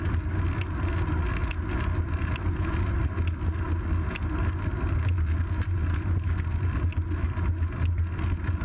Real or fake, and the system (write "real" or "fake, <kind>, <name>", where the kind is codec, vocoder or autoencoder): real